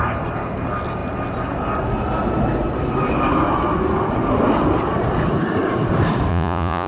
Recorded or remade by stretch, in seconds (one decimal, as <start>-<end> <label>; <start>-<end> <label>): 0.0-6.3 recorded; 6.3-6.9 remade